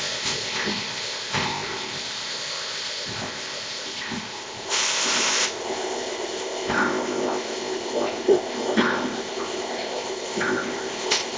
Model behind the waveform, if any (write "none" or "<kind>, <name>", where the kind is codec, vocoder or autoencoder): codec, ZipCodec